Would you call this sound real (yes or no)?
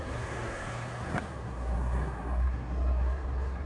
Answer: no